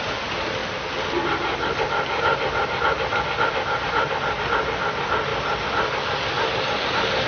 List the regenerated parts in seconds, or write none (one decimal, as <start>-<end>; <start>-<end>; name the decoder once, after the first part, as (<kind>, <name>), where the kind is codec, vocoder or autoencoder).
none